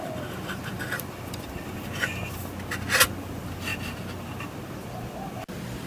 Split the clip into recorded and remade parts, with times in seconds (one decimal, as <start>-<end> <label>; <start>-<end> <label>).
0.0-5.9 recorded